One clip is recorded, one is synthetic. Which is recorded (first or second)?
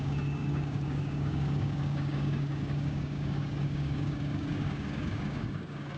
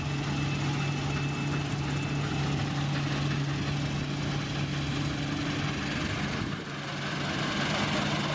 second